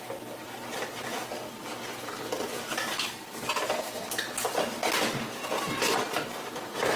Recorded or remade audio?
recorded